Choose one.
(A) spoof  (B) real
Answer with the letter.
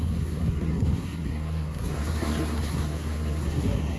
A